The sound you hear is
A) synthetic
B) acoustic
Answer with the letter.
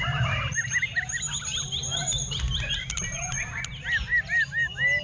B